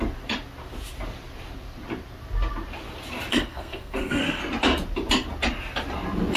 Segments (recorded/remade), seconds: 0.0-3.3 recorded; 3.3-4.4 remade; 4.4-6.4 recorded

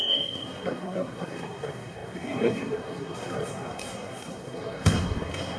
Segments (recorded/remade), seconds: 0.0-5.6 remade

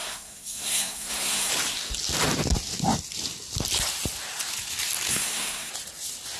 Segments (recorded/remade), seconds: 0.0-1.5 remade; 1.5-5.1 recorded; 5.1-5.7 remade; 5.7-6.4 recorded

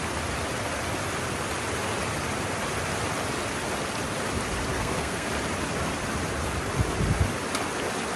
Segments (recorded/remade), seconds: 0.0-4.7 recorded; 4.7-5.3 remade; 5.3-8.2 recorded

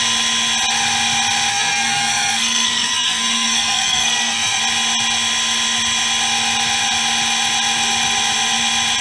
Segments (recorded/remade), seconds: 0.0-1.5 recorded; 1.5-4.6 remade; 4.6-9.0 recorded